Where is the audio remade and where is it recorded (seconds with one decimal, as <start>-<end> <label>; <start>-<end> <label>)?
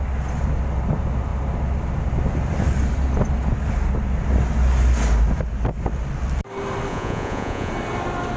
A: 0.0-6.9 recorded; 6.9-7.7 remade; 7.7-8.4 recorded